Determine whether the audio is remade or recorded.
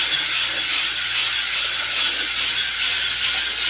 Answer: recorded